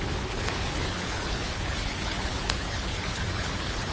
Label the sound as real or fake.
fake